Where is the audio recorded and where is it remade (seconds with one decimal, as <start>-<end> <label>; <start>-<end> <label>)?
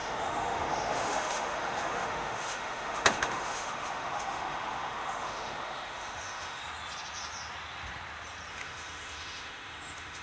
0.0-6.6 remade; 6.6-8.5 recorded; 8.5-10.2 remade